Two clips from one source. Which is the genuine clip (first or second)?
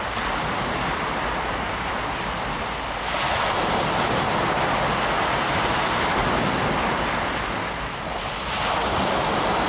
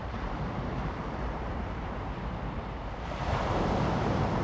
first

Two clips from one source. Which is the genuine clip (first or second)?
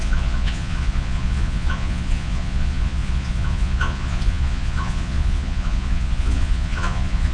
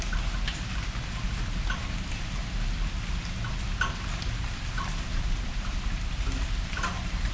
second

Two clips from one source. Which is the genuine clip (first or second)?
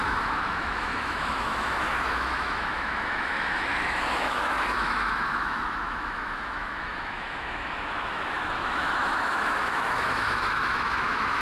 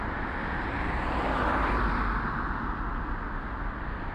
second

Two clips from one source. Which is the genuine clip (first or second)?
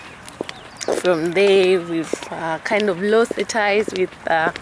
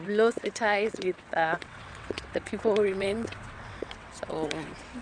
first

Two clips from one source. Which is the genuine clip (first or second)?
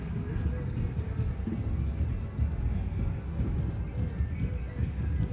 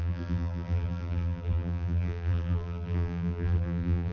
first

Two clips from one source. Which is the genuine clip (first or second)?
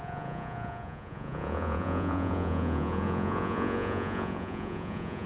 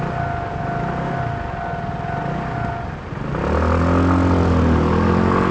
second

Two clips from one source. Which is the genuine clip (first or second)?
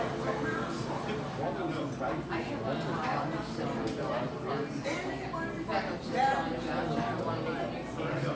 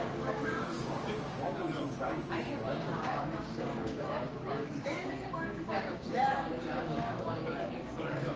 first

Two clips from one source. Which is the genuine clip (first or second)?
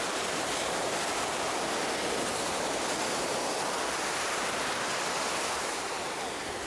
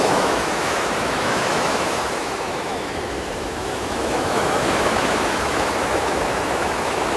first